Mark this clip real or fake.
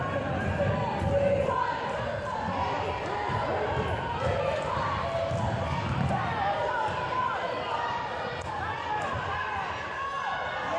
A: real